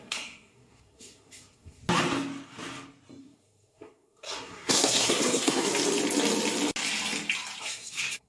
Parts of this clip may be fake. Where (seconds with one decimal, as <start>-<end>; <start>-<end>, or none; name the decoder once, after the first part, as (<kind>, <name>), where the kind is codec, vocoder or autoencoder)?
0.0-1.8 (codec, SNAC); 3.2-5.7; 7.6-8.3